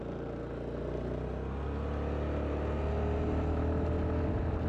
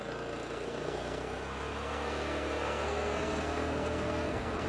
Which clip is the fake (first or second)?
second